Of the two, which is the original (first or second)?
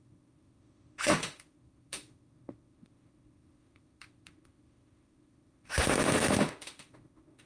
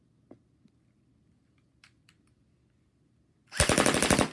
second